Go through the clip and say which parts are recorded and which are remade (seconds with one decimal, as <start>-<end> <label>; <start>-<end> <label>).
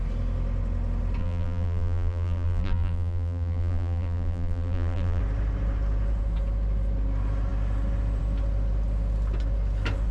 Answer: 0.0-1.2 recorded; 1.2-5.2 remade; 5.2-10.1 recorded